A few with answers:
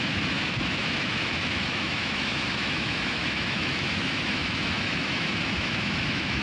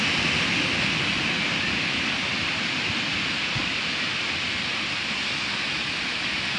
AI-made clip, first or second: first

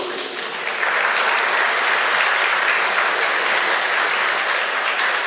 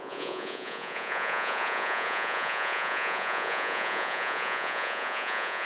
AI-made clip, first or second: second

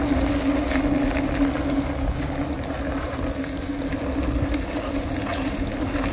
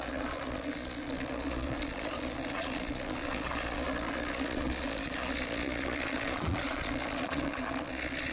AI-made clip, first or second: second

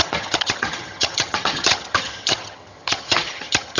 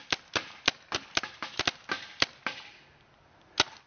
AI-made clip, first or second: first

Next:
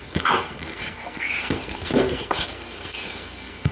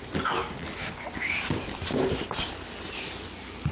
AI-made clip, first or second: first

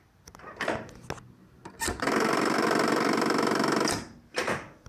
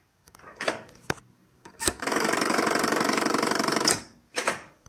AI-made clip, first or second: second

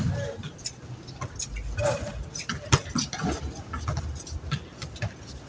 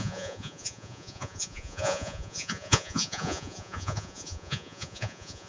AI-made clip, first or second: second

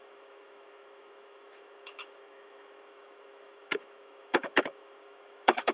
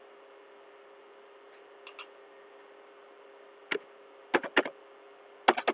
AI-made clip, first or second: first